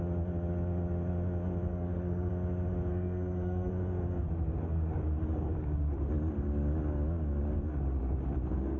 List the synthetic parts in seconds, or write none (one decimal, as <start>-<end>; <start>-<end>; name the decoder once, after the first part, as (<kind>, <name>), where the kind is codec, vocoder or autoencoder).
1.7-2.3 (codec, SNAC); 2.9-3.7